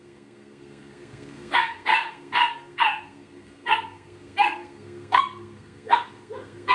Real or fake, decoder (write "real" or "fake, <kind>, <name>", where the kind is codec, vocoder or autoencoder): fake, codec, SNAC